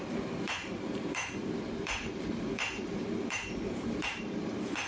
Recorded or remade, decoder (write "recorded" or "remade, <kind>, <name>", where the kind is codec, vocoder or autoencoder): remade, vocoder, BigVGAN v2